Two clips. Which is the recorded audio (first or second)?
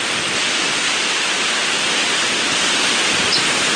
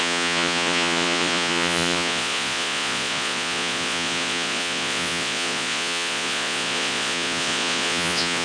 first